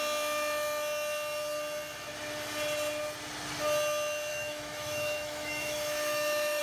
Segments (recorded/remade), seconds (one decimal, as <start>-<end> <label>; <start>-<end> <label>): 0.0-4.3 recorded; 4.3-6.6 remade